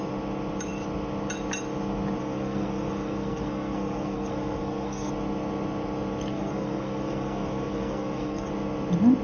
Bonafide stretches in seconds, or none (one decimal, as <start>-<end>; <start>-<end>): 0.0-2.2; 5.1-6.3; 8.5-9.2